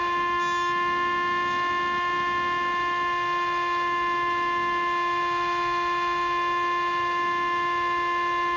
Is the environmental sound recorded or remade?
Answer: recorded